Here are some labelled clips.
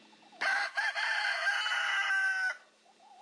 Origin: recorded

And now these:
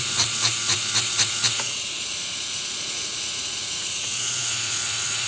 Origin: remade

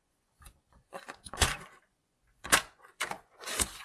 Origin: remade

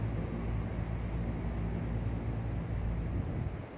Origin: recorded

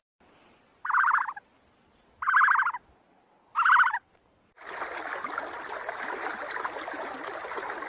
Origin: recorded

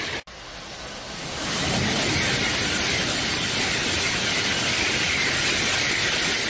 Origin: recorded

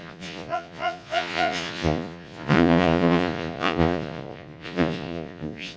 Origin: remade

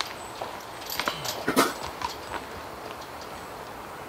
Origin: recorded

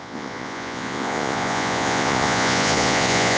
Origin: remade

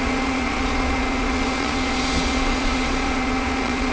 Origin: remade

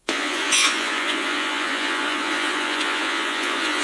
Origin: remade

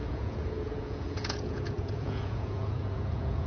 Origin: remade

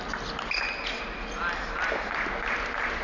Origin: recorded